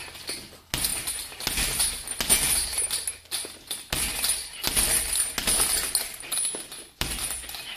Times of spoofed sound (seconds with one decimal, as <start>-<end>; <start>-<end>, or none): none

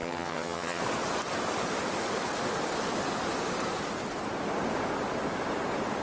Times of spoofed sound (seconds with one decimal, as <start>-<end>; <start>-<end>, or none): 0.0-0.8